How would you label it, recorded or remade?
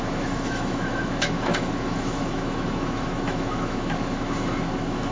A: remade